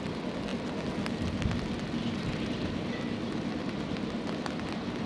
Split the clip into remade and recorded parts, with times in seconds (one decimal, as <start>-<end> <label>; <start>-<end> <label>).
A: 0.0-5.1 recorded